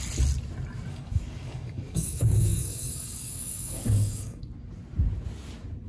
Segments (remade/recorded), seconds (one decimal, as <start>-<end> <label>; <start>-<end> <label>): 0.0-0.9 recorded; 0.9-4.4 remade; 4.4-5.9 recorded